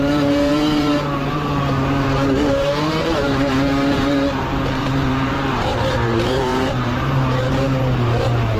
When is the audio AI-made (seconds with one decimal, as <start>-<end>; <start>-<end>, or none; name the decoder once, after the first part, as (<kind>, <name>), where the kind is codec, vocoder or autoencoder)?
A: 0.0-8.6 (vocoder, BigVGAN v2)